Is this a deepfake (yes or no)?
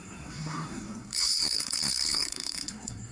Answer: yes